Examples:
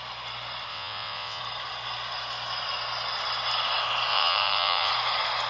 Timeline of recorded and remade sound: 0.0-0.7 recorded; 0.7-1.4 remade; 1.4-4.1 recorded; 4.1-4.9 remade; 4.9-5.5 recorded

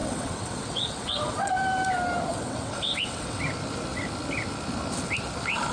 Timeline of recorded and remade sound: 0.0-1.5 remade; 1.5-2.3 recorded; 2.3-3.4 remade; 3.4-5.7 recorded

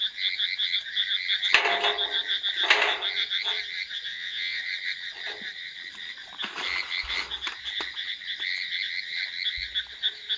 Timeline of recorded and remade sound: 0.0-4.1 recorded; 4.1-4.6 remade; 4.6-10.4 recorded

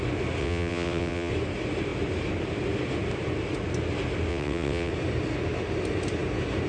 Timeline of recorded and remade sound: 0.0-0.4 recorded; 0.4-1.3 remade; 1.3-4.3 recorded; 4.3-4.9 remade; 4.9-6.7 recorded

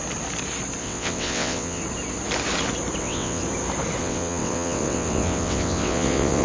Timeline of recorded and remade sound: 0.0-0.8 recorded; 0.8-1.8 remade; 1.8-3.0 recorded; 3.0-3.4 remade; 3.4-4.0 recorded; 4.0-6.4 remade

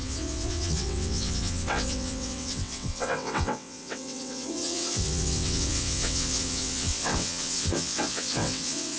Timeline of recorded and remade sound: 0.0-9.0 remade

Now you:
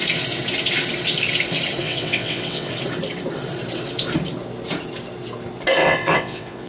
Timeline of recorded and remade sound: 0.0-1.8 recorded; 1.8-2.7 remade; 2.7-5.8 recorded; 5.8-6.7 remade